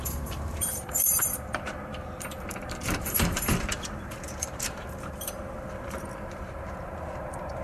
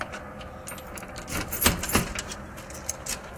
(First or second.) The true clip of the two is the second